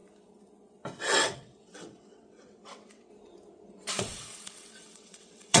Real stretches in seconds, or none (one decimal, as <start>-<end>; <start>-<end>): 0.0-1.0; 3.1-4.0